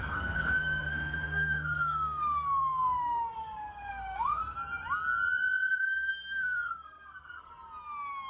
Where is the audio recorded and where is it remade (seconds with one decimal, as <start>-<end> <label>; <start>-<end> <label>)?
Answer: 0.0-4.4 remade; 4.4-5.7 recorded; 5.7-7.5 remade; 7.5-8.3 recorded